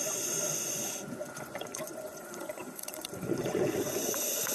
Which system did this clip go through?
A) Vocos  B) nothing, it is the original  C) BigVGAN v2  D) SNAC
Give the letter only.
A